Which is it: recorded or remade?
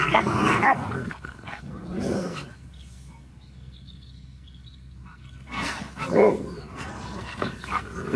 remade